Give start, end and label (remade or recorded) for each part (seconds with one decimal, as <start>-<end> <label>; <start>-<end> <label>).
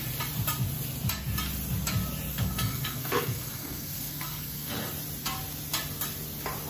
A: 0.0-2.3 recorded; 2.3-4.7 remade; 4.7-6.7 recorded